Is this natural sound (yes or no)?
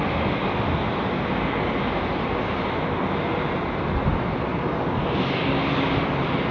yes